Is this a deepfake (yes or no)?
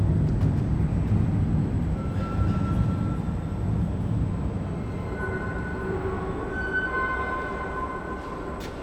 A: no